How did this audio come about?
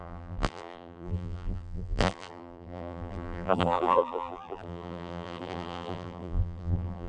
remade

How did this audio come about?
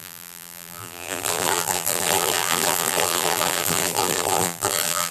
remade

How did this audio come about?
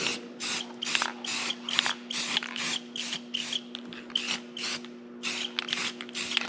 recorded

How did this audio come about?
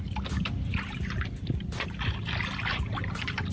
recorded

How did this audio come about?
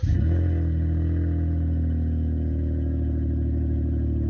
recorded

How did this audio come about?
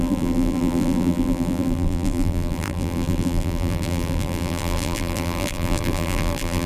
remade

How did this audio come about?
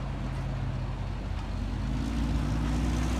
recorded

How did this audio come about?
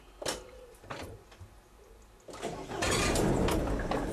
recorded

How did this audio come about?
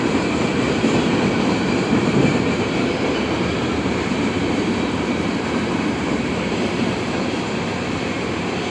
remade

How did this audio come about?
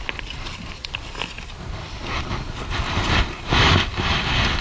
recorded